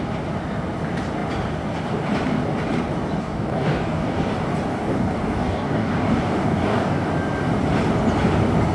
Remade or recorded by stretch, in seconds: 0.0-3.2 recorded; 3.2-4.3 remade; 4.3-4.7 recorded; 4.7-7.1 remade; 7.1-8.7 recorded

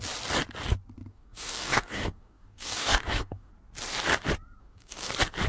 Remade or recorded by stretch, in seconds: 0.0-1.1 recorded; 1.1-3.5 remade; 3.5-4.6 recorded; 4.6-5.1 remade; 5.1-5.5 recorded

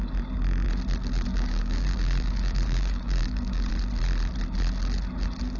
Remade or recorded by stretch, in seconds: 0.0-1.3 recorded; 1.3-3.7 remade; 3.7-5.6 recorded

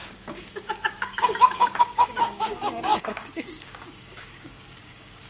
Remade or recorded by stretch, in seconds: 0.0-5.3 remade

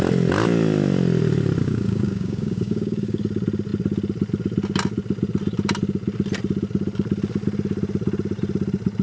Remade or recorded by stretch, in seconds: 0.0-1.6 recorded; 1.6-3.2 remade; 3.2-9.0 recorded

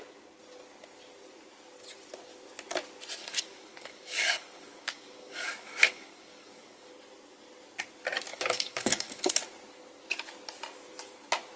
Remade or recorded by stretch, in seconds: 0.0-3.2 recorded; 3.2-6.9 remade; 6.9-8.3 recorded; 8.3-9.3 remade; 9.3-11.6 recorded